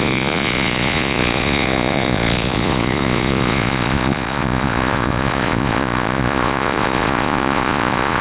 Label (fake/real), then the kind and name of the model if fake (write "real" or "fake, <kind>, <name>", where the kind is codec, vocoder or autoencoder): fake, vocoder, Vocos